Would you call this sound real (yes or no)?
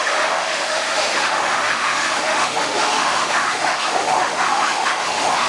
no